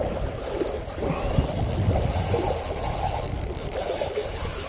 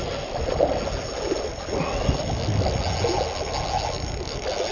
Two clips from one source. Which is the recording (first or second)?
second